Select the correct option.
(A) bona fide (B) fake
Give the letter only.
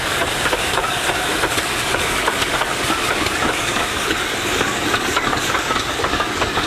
B